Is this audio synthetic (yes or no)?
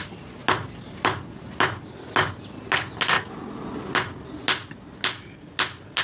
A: no